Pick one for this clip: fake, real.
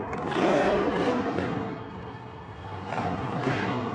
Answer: fake